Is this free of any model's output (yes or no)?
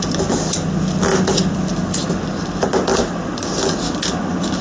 yes